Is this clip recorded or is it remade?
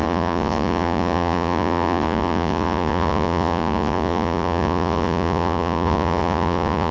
remade